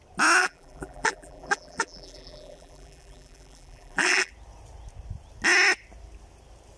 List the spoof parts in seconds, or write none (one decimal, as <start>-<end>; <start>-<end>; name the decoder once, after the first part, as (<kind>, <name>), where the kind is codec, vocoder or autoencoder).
0.4-4.3 (vocoder, BigVGAN v2)